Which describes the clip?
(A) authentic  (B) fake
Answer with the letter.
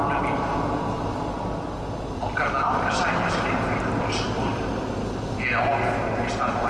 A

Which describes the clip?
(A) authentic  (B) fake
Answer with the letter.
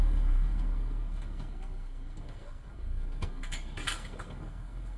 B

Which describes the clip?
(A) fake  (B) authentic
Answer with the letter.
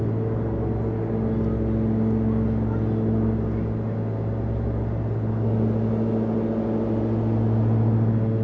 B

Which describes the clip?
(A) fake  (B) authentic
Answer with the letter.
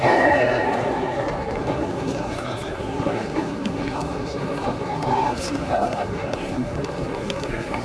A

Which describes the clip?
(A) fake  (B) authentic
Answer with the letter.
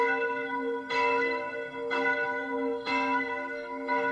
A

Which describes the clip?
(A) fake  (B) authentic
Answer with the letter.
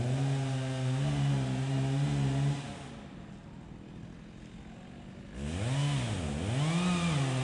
B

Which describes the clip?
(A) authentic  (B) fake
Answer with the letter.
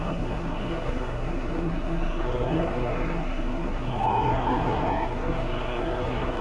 B